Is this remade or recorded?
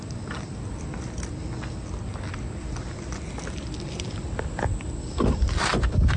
recorded